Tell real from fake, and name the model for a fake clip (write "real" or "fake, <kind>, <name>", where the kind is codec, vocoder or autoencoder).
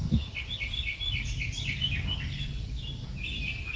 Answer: real